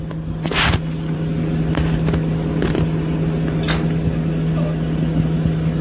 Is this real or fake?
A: real